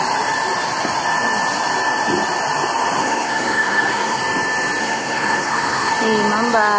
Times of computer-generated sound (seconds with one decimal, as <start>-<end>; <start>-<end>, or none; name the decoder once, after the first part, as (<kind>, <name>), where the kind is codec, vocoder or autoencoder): 3.0-4.2 (codec, SNAC); 4.8-5.9